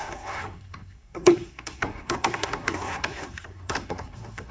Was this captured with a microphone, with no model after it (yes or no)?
no